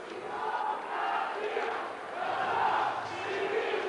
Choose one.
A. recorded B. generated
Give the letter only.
A